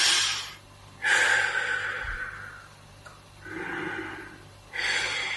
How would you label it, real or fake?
real